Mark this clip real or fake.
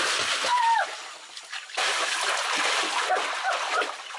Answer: real